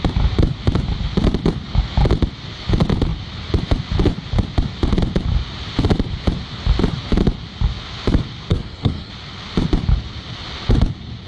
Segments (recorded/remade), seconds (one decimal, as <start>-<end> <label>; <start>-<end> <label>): 0.0-8.5 recorded; 8.5-9.1 remade; 9.1-11.3 recorded